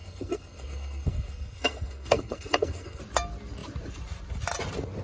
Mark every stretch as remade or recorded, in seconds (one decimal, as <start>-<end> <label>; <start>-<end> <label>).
0.0-3.0 remade; 3.0-5.0 recorded